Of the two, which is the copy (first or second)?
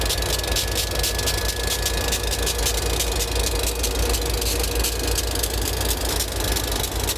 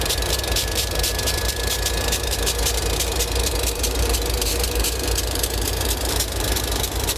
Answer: second